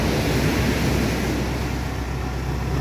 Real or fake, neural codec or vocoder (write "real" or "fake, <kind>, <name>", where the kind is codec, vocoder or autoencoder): real